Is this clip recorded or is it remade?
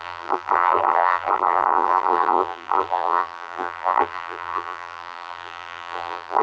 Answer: remade